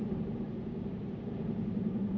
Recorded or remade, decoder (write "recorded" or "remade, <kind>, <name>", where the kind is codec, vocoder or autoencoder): remade, vocoder, BigVGAN v2